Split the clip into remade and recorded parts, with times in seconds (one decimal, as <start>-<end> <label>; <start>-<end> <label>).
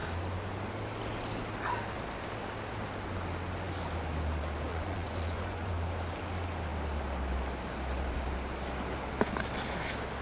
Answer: 0.0-4.7 recorded; 4.7-5.7 remade; 5.7-10.2 recorded